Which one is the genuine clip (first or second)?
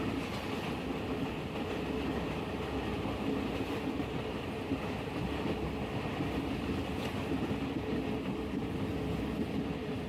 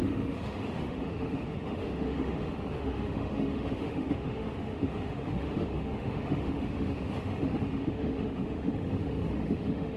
first